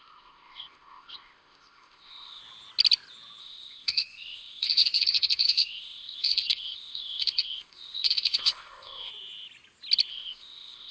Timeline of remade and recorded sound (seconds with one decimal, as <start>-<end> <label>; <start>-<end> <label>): 0.0-2.4 remade; 2.4-3.4 recorded; 3.4-9.1 remade; 9.1-10.1 recorded; 10.1-10.9 remade